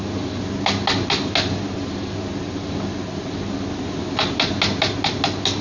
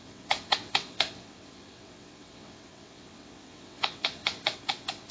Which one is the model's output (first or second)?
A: second